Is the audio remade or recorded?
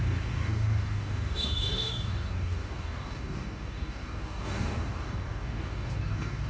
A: remade